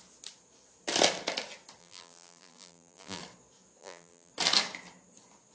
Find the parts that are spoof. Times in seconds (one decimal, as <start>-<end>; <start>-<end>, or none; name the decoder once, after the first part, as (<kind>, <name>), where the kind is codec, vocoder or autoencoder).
1.8-3.2 (vocoder, BigVGAN v2); 3.8-4.3